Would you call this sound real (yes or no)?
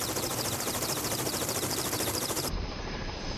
no